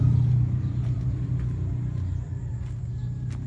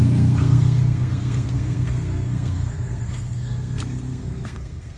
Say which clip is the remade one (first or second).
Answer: second